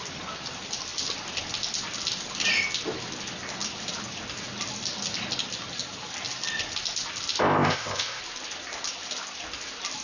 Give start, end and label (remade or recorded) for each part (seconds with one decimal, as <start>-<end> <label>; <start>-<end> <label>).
0.0-7.4 recorded; 7.4-8.2 remade; 8.2-10.0 recorded